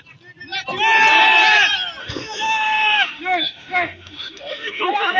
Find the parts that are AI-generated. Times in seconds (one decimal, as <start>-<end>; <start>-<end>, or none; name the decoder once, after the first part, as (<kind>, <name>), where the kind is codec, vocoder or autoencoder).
2.0-5.2 (autoencoder, DAC-VAE)